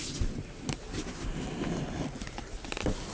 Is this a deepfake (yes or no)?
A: no